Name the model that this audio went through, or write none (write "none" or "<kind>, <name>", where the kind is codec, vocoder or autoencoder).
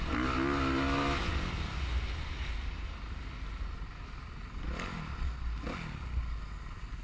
none